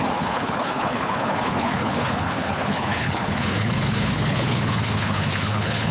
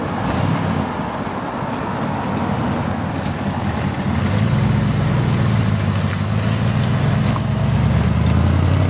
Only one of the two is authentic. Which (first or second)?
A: second